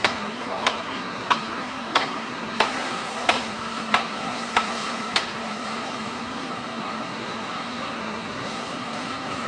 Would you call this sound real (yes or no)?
no